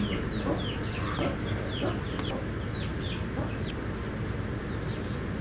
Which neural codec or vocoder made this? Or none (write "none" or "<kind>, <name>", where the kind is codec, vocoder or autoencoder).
none